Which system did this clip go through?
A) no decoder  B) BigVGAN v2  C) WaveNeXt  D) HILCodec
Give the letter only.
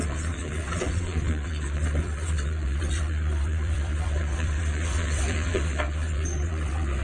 C